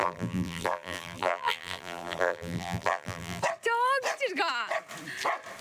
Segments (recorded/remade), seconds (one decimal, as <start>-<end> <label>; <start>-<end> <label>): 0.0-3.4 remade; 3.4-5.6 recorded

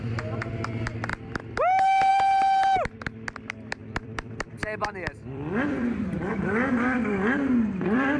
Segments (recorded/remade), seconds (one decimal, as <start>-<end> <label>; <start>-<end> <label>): 0.0-3.8 recorded; 3.8-8.2 remade

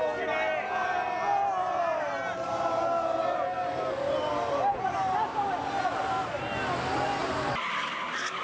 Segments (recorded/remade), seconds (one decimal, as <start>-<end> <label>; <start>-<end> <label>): 0.0-0.8 recorded; 0.8-5.6 remade; 5.6-6.0 recorded; 6.0-6.6 remade; 6.6-8.4 recorded

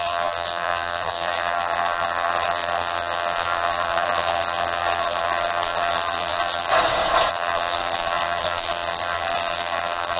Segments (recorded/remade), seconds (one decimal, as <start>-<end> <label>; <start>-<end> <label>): 0.0-6.7 remade; 6.7-7.3 recorded; 7.3-10.2 remade

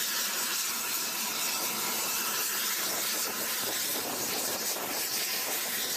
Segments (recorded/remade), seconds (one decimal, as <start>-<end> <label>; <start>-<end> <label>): 0.0-1.3 remade; 1.3-1.9 recorded; 1.9-6.0 remade

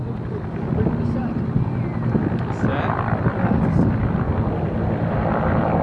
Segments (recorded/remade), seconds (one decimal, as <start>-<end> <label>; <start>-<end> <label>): 0.0-2.7 recorded; 2.7-3.4 remade; 3.4-5.8 recorded

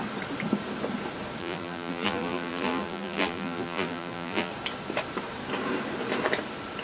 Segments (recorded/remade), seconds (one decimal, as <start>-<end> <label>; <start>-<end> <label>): 0.0-1.4 recorded; 1.4-4.5 remade; 4.5-6.8 recorded